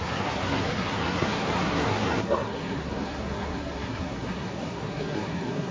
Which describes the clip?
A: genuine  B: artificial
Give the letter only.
B